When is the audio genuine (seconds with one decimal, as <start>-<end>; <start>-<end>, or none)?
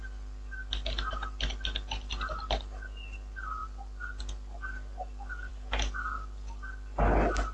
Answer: 0.0-7.5